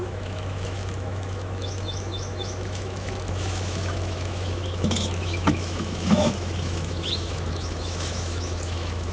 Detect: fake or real fake